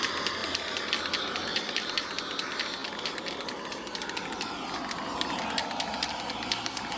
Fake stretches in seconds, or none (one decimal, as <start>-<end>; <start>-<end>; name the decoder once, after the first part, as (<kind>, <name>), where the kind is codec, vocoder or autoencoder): 0.4-0.9 (vocoder, BigVGAN v2); 1.5-2.2